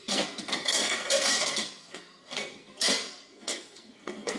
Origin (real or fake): fake